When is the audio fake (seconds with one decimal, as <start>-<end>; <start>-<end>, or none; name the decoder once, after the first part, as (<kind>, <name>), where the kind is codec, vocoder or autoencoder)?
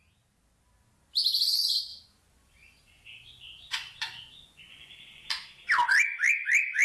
1.9-5.3 (vocoder, Vocos)